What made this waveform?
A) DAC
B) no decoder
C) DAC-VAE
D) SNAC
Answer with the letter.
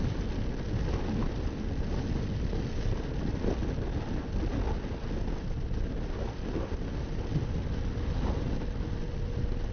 B